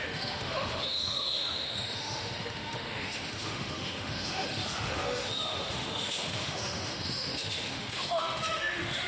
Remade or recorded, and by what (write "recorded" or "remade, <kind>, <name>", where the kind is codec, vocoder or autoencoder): remade, autoencoder, DAC-VAE